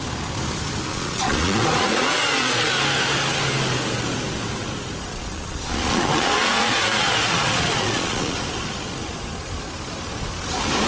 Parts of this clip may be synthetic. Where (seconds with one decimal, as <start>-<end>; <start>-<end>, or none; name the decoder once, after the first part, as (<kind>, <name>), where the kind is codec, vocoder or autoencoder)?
0.9-2.7 (vocoder, Vocos); 5.1-8.4